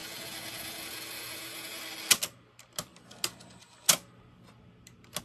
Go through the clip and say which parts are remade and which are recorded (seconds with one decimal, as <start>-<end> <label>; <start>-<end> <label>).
0.0-1.8 remade; 1.8-5.2 recorded